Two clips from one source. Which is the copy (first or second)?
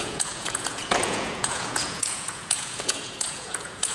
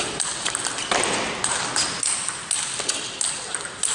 first